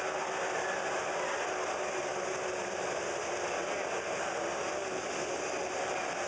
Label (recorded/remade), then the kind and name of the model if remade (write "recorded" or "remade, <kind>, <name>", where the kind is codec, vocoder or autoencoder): recorded